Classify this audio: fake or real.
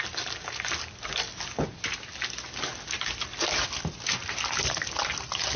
real